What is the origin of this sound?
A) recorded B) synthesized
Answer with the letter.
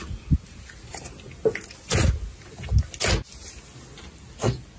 A